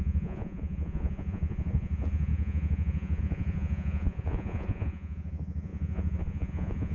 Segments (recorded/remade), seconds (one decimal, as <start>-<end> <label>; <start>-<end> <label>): 0.0-6.9 remade